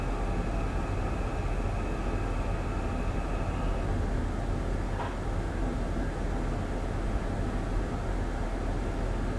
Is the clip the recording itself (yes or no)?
yes